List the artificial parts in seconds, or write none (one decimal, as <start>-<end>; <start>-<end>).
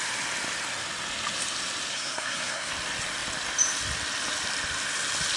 1.9-2.7